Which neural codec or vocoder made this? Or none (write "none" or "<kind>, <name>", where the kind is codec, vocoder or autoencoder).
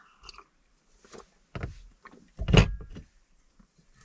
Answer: none